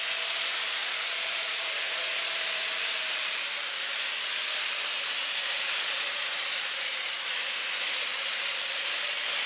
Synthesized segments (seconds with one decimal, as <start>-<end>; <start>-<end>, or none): 0.8-2.3; 5.4-8.2